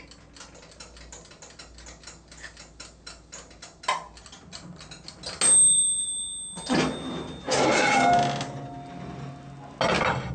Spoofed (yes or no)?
no